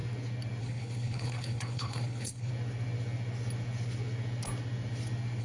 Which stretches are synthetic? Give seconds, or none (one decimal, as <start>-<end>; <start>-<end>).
0.6-2.5